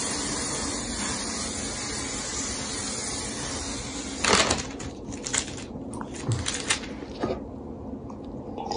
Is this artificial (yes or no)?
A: no